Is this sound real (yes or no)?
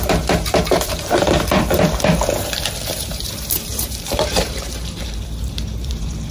no